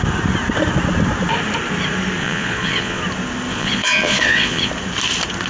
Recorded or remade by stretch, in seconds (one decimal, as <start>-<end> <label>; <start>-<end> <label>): 0.0-2.2 recorded; 2.2-3.0 remade; 3.0-3.5 recorded; 3.5-4.7 remade; 4.7-5.5 recorded